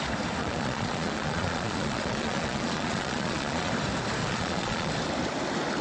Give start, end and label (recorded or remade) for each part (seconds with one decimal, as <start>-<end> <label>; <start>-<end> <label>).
0.0-0.4 recorded; 0.4-3.7 remade; 3.7-4.2 recorded; 4.2-4.9 remade; 4.9-5.8 recorded